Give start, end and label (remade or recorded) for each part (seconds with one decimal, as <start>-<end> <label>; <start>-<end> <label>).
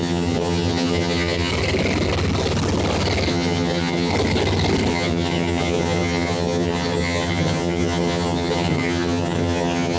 0.0-1.5 remade; 1.5-3.3 recorded; 3.3-4.1 remade; 4.1-4.9 recorded; 4.9-10.0 remade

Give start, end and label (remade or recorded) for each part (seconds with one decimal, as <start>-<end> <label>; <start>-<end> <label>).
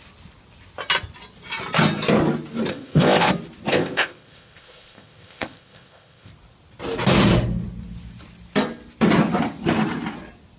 0.0-2.7 recorded; 2.7-3.3 remade; 3.3-3.7 recorded; 3.7-6.3 remade; 6.3-10.6 recorded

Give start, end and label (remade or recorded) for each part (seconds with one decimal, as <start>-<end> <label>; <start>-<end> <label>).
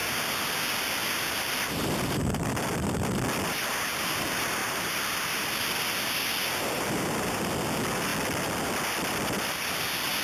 0.0-0.6 remade; 0.6-1.0 recorded; 1.0-2.5 remade; 2.5-4.6 recorded; 4.6-5.5 remade; 5.5-10.2 recorded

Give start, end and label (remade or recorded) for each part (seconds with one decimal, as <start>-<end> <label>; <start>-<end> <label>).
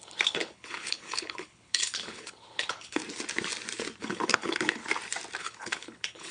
0.0-3.0 remade; 3.0-4.0 recorded; 4.0-4.8 remade; 4.8-5.4 recorded; 5.4-6.3 remade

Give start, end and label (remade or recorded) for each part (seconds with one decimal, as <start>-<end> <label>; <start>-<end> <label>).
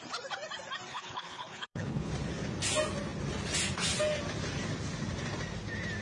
0.0-0.9 recorded; 0.9-2.1 remade; 2.1-6.0 recorded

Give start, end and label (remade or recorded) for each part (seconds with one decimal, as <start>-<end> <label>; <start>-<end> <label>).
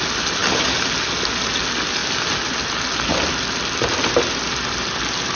0.0-5.4 recorded